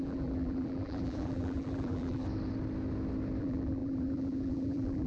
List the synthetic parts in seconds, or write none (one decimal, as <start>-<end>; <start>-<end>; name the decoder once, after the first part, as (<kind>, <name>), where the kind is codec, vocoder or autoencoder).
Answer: 0.0-2.2 (vocoder, BigVGAN v2); 3.4-5.1